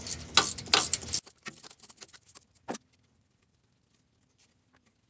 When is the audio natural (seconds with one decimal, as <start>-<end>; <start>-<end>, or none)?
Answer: 0.0-5.1